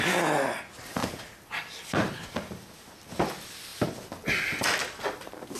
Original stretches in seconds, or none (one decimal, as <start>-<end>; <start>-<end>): 0.0-5.6

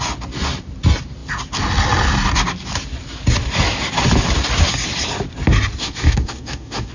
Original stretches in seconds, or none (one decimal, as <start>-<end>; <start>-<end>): 0.0-5.8

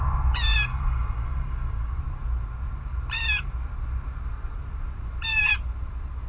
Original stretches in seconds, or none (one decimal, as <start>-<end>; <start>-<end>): 0.0-0.7; 2.0-6.3

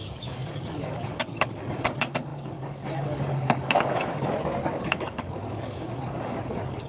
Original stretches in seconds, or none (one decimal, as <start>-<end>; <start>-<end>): none

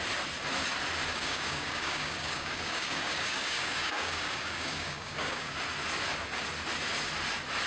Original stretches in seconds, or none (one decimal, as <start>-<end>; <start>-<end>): 0.0-1.1; 5.5-7.7

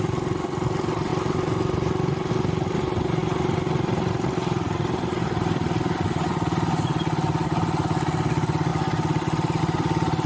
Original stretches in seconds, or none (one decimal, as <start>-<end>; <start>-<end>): 0.0-10.3